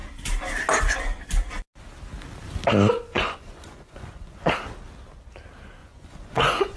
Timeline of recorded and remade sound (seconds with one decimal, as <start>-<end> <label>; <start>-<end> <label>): 0.0-3.1 recorded; 3.1-4.5 remade; 4.5-5.8 recorded; 5.8-6.8 remade